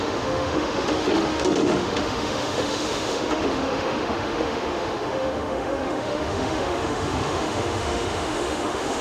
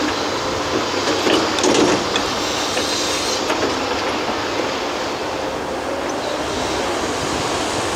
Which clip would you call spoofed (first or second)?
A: first